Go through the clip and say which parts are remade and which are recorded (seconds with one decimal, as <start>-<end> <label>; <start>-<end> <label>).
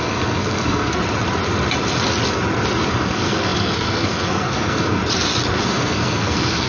0.0-1.0 remade; 1.0-2.9 recorded; 2.9-5.0 remade; 5.0-5.5 recorded; 5.5-6.7 remade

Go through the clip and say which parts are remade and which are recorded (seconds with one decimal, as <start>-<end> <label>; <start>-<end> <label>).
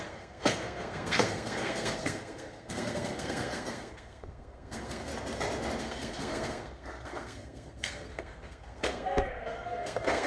0.0-5.1 remade; 5.1-5.8 recorded; 5.8-10.3 remade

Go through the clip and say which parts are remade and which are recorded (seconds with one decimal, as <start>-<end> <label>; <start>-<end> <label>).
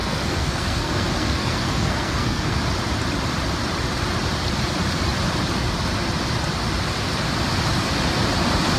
0.0-2.6 remade; 2.6-8.8 recorded